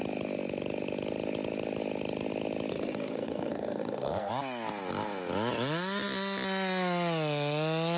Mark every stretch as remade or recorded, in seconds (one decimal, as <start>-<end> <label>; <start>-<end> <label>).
0.0-2.7 recorded; 2.7-4.3 remade; 4.3-8.0 recorded